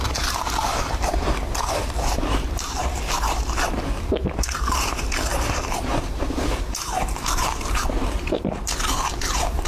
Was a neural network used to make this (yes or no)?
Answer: yes